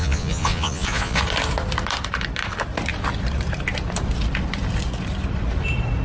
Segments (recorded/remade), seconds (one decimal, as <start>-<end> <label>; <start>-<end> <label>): 0.0-1.2 remade; 1.2-6.0 recorded